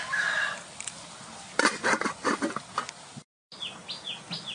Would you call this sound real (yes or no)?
yes